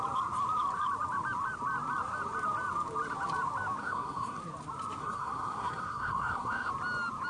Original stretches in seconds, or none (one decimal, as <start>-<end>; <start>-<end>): 0.0-3.8; 4.4-5.0; 6.7-7.3